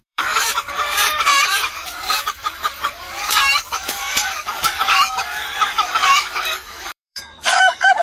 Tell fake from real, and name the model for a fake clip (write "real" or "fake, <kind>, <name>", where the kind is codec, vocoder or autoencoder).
fake, codec, DAC